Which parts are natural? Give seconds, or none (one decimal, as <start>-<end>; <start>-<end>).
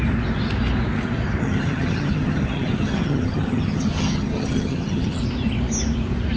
0.0-1.4; 5.2-6.4